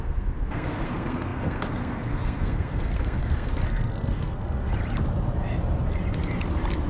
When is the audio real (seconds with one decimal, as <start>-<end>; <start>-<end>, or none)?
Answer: 4.7-6.9

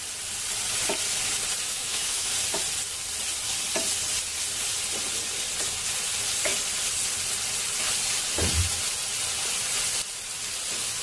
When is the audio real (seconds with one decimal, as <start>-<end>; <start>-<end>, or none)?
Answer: 0.0-1.7; 2.3-11.0